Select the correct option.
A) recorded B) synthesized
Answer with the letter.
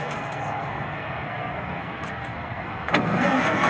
B